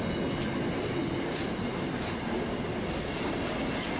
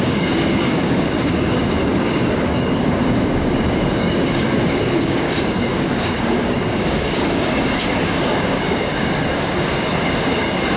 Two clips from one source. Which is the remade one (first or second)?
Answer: second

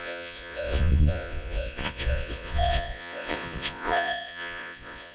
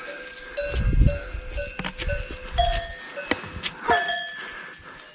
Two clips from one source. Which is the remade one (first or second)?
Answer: first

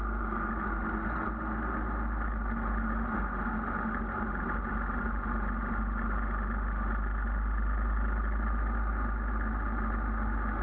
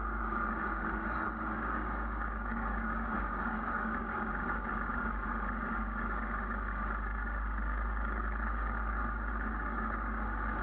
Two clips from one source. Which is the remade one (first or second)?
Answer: second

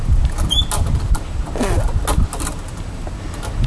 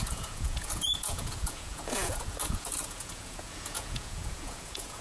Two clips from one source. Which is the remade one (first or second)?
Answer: second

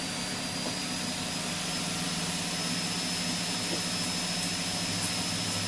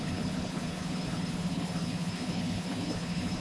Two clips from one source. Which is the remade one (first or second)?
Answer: second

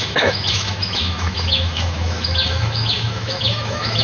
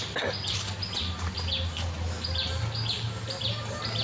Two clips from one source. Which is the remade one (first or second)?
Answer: first